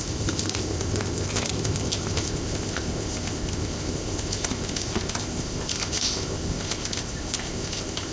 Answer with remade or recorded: remade